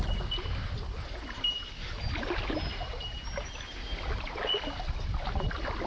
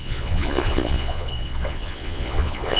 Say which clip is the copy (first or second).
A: second